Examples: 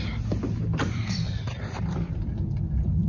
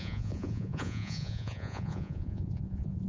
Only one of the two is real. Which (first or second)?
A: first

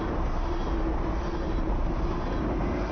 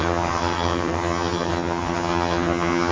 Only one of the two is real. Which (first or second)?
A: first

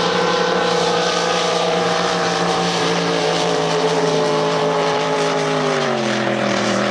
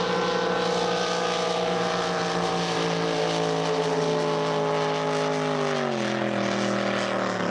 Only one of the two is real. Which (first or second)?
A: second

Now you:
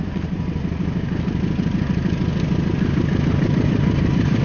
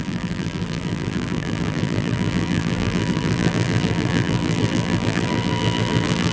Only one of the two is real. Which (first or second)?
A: first